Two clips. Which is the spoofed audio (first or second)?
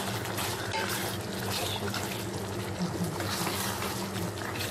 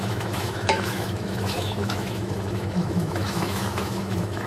second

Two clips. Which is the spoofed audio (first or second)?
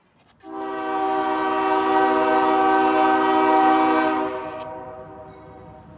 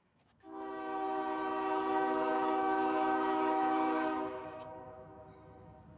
second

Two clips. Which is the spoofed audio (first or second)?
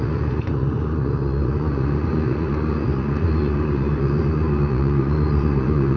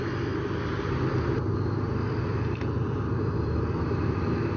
first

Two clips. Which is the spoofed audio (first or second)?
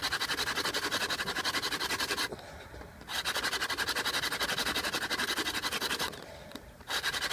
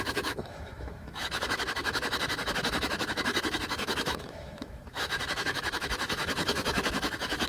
second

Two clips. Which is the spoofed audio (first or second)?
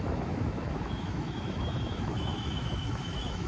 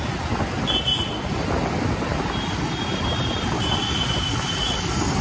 first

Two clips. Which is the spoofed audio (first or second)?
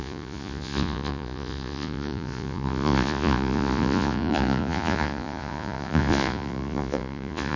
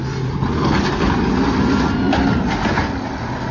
first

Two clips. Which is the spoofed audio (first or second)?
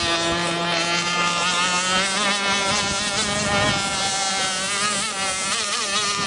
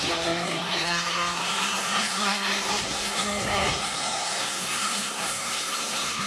second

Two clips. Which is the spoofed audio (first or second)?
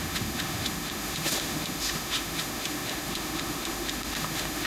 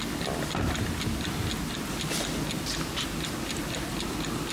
first